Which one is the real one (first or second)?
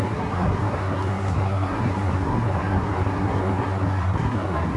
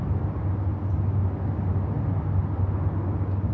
second